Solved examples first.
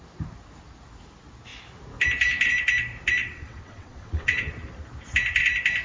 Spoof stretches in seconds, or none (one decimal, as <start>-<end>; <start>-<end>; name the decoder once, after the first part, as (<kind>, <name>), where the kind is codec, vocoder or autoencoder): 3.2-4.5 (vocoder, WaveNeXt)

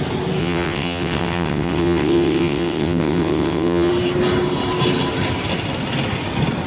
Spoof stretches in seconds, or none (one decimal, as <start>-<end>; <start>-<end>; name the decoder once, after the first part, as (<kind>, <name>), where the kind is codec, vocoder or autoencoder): 0.4-3.9 (vocoder, WaveNeXt)

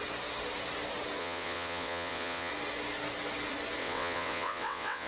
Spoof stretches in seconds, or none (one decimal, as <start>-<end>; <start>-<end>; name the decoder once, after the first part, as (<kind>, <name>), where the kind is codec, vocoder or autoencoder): 1.2-2.5 (vocoder, WaveNeXt); 3.8-5.1

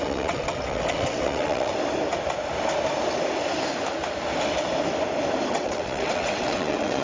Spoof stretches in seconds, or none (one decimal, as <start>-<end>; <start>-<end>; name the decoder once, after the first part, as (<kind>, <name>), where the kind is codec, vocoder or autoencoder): 0.0-1.7 (vocoder, WaveNeXt); 5.5-7.0